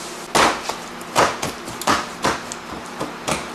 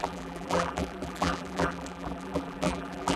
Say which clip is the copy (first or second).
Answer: second